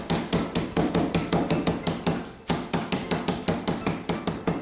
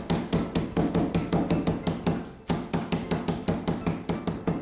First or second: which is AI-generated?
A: first